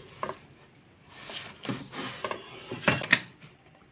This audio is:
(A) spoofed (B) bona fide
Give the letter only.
B